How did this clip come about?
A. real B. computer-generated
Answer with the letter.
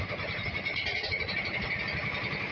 A